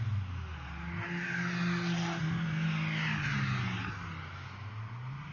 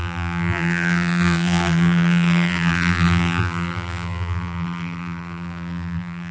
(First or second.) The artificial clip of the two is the second